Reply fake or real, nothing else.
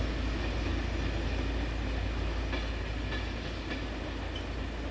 real